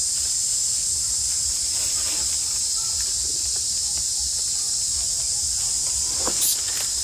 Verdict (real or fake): real